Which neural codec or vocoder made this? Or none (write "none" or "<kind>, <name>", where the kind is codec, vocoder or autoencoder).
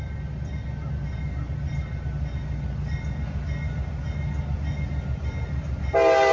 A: none